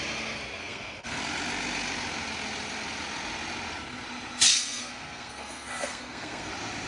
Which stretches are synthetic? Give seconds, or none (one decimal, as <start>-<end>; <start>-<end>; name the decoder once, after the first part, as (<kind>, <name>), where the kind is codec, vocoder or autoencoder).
0.6-1.2 (codec, SNAC); 4.5-6.5